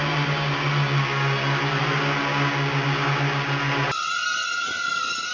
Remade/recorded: recorded